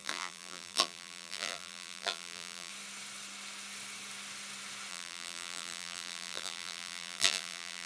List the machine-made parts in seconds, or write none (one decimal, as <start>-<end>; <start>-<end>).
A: 0.0-2.7; 4.9-7.9